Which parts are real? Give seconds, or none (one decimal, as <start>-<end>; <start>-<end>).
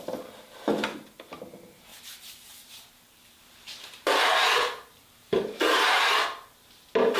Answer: 0.0-1.9; 6.2-7.2